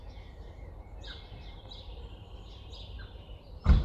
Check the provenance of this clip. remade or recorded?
remade